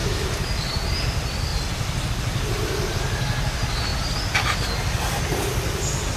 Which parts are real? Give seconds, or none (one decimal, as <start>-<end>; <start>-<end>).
3.9-6.2